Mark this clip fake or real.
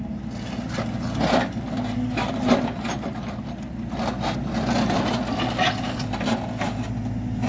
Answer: real